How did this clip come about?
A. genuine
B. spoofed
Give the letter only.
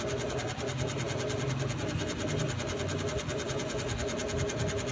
A